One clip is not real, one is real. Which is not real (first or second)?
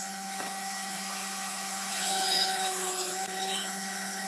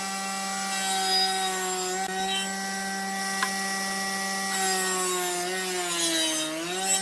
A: first